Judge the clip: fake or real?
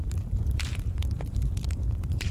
fake